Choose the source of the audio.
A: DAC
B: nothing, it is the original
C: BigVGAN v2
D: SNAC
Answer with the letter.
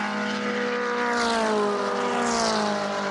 B